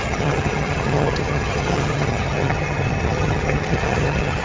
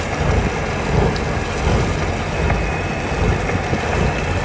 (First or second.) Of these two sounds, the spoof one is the first